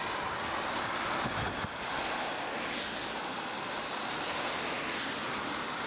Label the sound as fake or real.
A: real